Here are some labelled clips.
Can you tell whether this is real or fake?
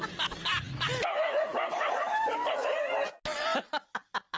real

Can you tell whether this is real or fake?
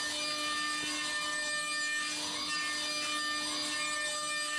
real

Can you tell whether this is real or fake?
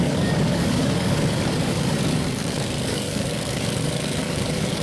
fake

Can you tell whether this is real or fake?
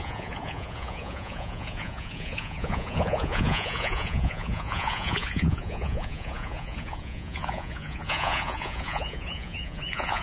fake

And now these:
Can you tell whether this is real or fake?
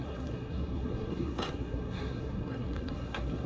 fake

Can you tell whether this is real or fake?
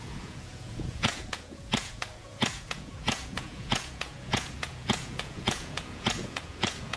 fake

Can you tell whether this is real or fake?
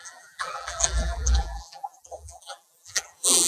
fake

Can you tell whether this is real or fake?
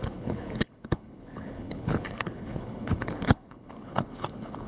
fake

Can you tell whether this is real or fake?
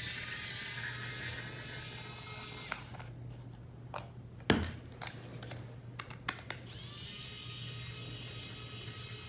real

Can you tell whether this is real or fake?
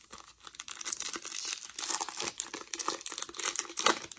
real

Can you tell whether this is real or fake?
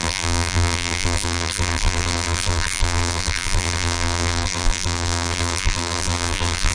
fake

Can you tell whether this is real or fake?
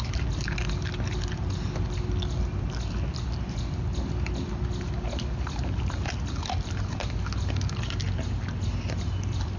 real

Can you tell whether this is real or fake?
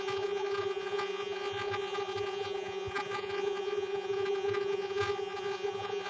fake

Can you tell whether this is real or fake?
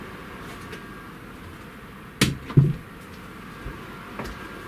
real